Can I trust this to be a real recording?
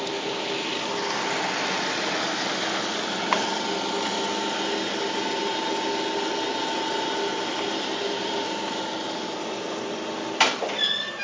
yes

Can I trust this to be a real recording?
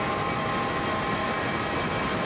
yes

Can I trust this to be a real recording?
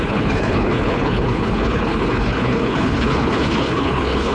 no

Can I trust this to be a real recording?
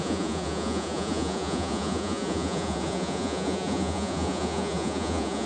no